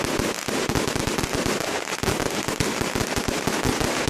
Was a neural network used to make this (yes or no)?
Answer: no